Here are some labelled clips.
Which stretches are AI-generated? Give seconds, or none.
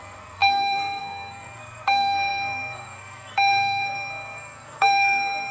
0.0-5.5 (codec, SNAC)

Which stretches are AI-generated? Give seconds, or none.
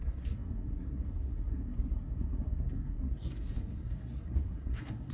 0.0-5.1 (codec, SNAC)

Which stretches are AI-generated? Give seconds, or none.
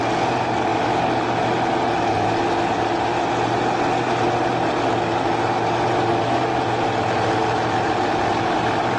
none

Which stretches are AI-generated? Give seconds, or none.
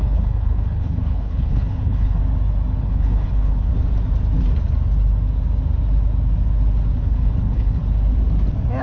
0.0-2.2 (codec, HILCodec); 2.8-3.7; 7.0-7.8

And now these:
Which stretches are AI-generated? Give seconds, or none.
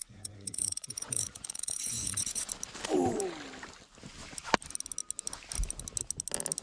0.0-2.5 (vocoder, Vocos)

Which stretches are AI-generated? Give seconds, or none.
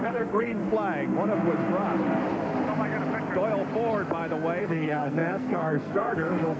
0.0-0.6 (codec, SNAC); 4.6-6.6